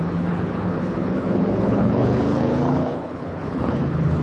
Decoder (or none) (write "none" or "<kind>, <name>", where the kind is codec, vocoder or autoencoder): codec, HILCodec